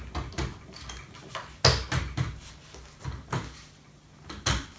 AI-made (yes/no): no